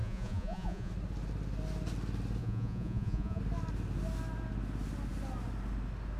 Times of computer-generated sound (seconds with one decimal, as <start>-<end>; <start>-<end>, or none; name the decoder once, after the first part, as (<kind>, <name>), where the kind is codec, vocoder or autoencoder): 0.0-0.9 (vocoder, Vocos); 2.4-3.4